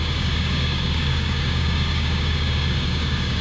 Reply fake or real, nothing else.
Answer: fake